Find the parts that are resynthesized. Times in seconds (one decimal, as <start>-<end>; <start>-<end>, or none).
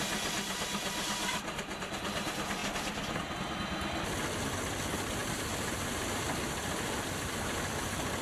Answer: none